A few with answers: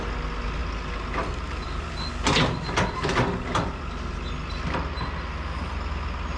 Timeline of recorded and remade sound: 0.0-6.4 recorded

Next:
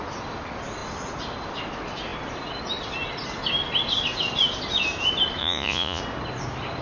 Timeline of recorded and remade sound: 0.0-5.4 recorded; 5.4-6.0 remade; 6.0-6.8 recorded

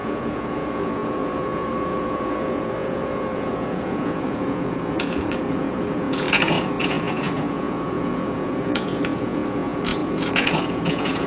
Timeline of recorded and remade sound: 0.0-11.3 remade

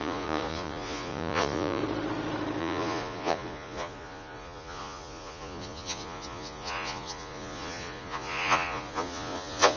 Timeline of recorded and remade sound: 0.0-1.8 remade; 1.8-2.6 recorded; 2.6-9.8 remade